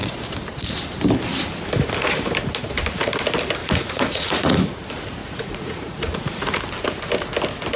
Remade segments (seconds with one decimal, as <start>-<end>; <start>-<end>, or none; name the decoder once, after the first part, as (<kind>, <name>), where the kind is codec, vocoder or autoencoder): 3.6-4.7 (vocoder, Vocos); 5.2-6.6